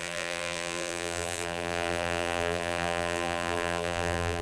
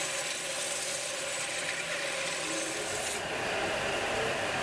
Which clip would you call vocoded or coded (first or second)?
first